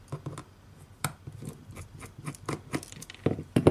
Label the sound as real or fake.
real